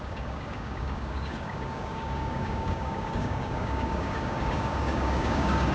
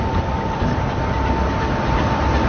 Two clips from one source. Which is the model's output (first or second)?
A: first